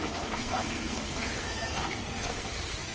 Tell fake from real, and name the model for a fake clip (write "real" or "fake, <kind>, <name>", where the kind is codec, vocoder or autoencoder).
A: fake, codec, SNAC